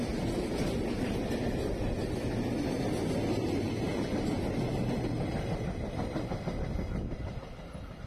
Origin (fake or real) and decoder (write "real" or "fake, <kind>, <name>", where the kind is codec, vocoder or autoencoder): real